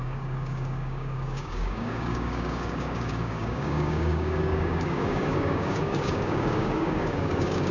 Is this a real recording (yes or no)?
no